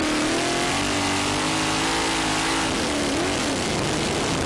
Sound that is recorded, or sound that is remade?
recorded